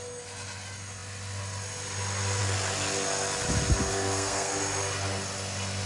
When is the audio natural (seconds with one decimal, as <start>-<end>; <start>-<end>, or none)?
0.0-3.9; 4.5-5.9